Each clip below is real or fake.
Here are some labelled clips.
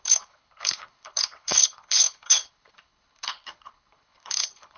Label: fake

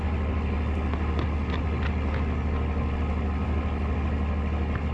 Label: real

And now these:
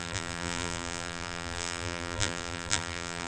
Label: fake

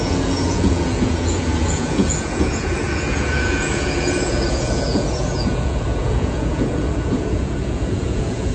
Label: fake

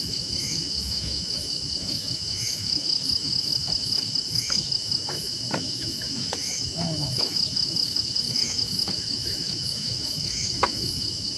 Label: fake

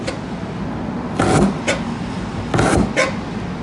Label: real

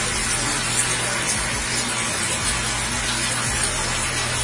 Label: real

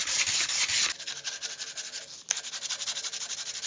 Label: real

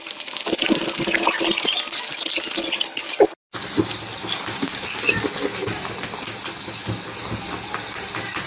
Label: real